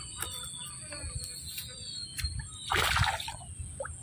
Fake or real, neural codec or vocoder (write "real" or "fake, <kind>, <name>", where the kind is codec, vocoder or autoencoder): real